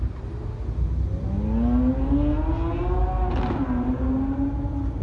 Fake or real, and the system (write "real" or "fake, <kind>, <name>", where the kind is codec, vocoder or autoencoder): real